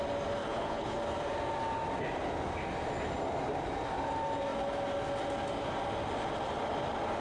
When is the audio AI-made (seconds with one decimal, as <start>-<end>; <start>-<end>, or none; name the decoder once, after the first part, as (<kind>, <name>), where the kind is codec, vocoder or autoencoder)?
0.4-1.0 (codec, HILCodec)